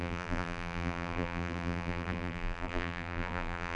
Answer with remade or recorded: remade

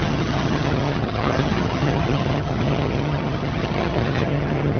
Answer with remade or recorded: remade